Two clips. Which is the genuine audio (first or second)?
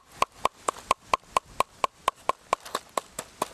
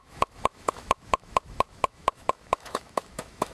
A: first